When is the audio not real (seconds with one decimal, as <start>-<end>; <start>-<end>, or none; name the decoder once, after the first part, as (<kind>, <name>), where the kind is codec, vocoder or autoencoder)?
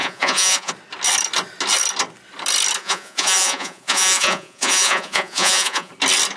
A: 0.0-0.7 (vocoder, Vocos); 2.8-5.9